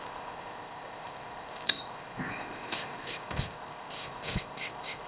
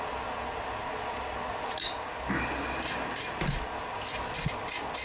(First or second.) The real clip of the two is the second